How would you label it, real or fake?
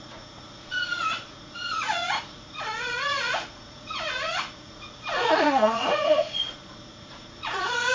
fake